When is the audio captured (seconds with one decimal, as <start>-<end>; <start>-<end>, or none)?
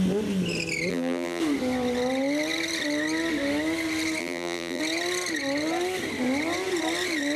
0.0-0.9; 1.4-4.2; 4.8-7.4